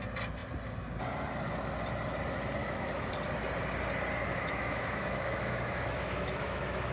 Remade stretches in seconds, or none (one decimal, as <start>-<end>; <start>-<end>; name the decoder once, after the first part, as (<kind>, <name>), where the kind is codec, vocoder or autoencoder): 2.6-3.1 (autoencoder, DAC-VAE); 4.3-6.9